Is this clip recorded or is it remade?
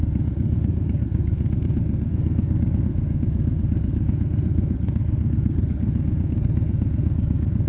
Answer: remade